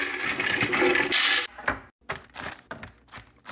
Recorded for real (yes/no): yes